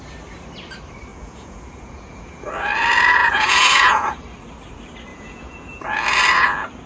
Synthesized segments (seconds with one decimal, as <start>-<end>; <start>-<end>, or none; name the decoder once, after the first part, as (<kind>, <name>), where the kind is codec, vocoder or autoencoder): 1.1-2.5 (vocoder, Vocos); 3.2-4.2; 5.1-5.8